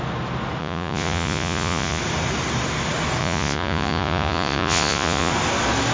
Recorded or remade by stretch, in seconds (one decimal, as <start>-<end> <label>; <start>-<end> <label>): 0.0-0.6 recorded; 0.6-2.0 remade; 2.0-3.2 recorded; 3.2-5.3 remade; 5.3-5.9 recorded

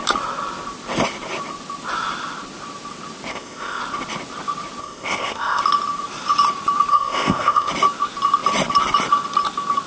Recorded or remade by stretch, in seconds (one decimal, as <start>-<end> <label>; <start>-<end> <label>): 0.0-3.3 recorded; 3.3-3.8 remade; 3.8-4.8 recorded; 4.8-5.6 remade; 5.6-6.9 recorded; 6.9-7.7 remade; 7.7-9.9 recorded

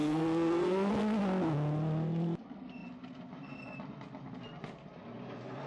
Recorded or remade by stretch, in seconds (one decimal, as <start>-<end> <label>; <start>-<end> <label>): 0.0-0.9 remade; 0.9-5.7 recorded

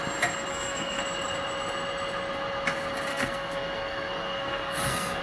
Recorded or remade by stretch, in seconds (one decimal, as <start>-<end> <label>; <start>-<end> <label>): 0.0-0.5 recorded; 0.5-1.0 remade; 1.0-3.1 recorded; 3.1-5.2 remade

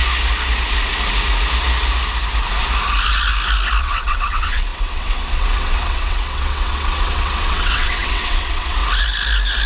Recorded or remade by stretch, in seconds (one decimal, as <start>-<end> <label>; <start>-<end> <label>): 0.0-3.8 recorded; 3.8-8.8 remade; 8.8-9.7 recorded

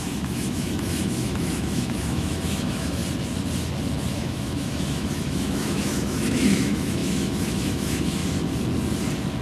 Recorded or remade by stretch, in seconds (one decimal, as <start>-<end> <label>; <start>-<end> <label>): 0.0-3.0 remade; 3.0-4.1 recorded; 4.1-8.2 remade; 8.2-9.4 recorded